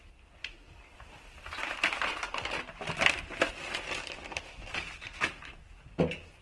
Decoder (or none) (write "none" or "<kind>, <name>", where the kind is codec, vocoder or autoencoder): none